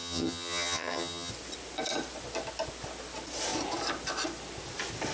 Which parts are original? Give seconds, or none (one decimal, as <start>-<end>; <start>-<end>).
1.3-5.1